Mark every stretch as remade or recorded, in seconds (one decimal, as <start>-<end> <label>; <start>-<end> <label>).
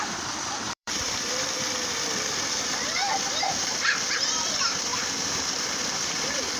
0.0-6.6 remade